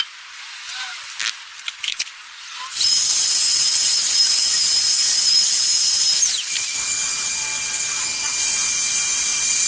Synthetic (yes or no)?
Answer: no